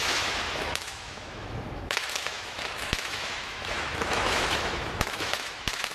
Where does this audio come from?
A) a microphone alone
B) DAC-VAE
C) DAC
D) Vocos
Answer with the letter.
B